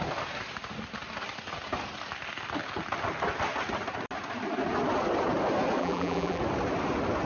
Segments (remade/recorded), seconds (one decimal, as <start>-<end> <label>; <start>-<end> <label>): 0.0-5.8 recorded; 5.8-6.4 remade; 6.4-7.2 recorded